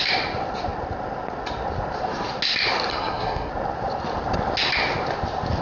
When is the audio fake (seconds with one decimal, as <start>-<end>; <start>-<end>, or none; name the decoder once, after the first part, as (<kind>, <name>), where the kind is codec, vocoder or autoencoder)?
2.9-3.5 (codec, SNAC)